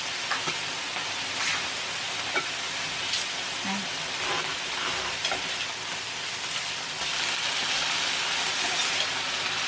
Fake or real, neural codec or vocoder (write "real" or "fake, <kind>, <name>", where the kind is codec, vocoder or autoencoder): real